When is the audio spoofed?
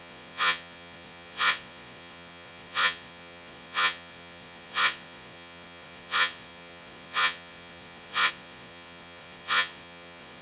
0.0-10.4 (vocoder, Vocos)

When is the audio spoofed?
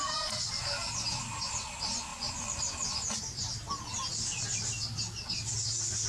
2.1-2.6 (vocoder, Vocos)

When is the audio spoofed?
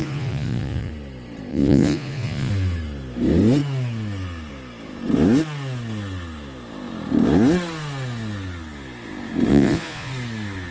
0.0-0.9 (vocoder, Vocos); 1.5-2.5; 9.5-10.1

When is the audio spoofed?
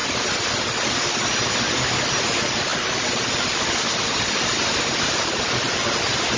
none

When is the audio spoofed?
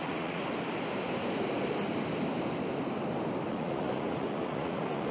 0.0-0.4 (vocoder, Vocos); 3.5-5.1